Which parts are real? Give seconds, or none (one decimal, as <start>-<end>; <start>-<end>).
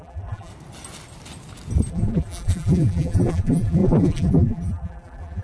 0.5-1.9